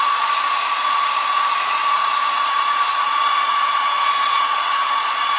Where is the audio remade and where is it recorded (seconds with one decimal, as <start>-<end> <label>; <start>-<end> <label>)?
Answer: 0.0-5.4 remade